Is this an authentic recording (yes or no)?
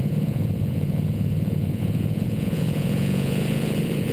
no